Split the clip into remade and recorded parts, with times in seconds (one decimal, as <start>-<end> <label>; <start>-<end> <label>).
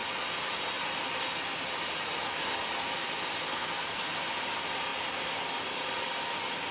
0.0-3.4 recorded; 3.4-4.1 remade; 4.1-6.7 recorded